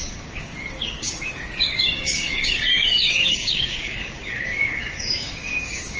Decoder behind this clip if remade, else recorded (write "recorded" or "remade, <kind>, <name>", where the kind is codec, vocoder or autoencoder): remade, codec, DAC